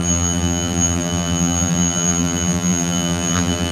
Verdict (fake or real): fake